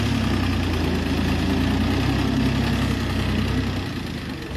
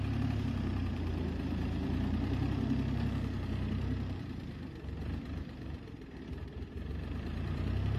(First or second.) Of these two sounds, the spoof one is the second